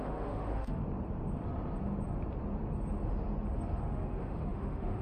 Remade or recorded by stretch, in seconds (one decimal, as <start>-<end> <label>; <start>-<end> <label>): 0.0-0.8 remade; 0.8-3.8 recorded; 3.8-5.0 remade